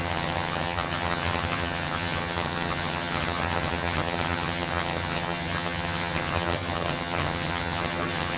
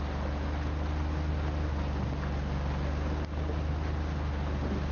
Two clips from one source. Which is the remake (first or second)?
first